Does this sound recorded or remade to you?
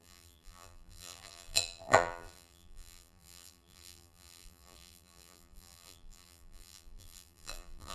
remade